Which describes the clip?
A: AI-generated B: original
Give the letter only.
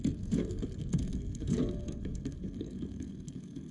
A